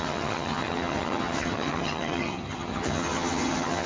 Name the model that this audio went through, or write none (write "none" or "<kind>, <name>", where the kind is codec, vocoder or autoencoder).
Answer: vocoder, HiFi-GAN